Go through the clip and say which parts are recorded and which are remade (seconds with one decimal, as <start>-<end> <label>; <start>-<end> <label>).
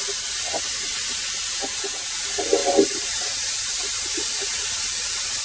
0.0-5.4 recorded